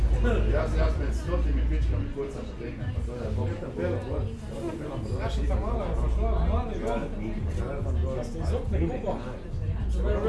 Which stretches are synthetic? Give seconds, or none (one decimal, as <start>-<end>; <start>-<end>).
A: none